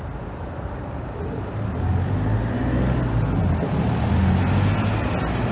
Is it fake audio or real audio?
real